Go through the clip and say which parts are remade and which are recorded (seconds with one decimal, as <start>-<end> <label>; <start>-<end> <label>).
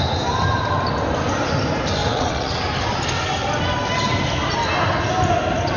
0.0-2.0 recorded; 2.0-2.6 remade; 2.6-5.8 recorded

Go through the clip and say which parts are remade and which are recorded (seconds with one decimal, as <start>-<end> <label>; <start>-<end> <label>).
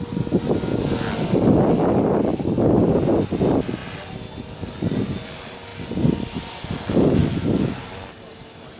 0.0-8.8 recorded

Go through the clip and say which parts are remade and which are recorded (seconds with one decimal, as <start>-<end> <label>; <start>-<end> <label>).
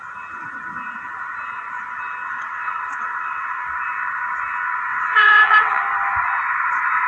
0.0-2.3 recorded; 2.3-3.7 remade; 3.7-4.9 recorded; 4.9-5.8 remade; 5.8-7.1 recorded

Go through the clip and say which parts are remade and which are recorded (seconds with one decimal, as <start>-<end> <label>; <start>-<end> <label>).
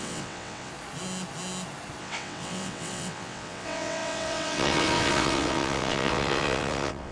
0.0-0.7 remade; 0.7-2.0 recorded; 2.0-7.1 remade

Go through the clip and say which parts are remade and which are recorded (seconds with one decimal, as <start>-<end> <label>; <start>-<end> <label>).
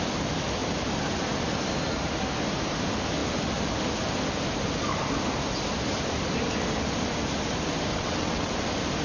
0.0-7.9 recorded; 7.9-8.5 remade; 8.5-9.0 recorded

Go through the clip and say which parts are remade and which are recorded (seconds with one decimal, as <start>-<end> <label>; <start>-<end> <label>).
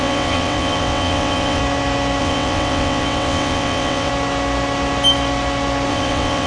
0.0-1.6 remade; 1.6-2.2 recorded; 2.2-4.1 remade; 4.1-5.9 recorded; 5.9-6.5 remade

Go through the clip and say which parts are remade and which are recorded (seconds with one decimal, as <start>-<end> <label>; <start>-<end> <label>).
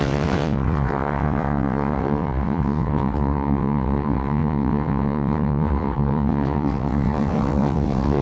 0.0-8.2 remade